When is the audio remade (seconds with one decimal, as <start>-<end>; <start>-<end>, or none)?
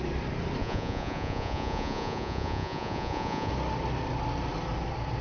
0.6-3.5